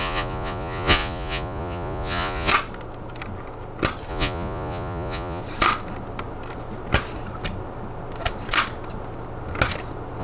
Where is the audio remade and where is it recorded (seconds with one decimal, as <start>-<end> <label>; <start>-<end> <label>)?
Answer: 0.0-2.5 remade; 2.5-4.1 recorded; 4.1-5.4 remade; 5.4-10.2 recorded